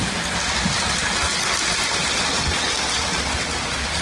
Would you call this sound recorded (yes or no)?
yes